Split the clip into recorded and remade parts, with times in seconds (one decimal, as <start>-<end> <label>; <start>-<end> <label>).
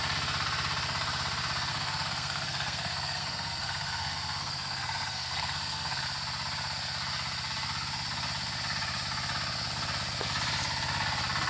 0.0-1.7 recorded; 1.7-6.0 remade; 6.0-11.5 recorded